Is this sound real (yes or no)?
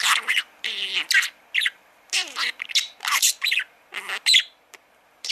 no